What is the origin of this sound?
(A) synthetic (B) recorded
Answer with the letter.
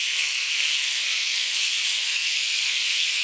A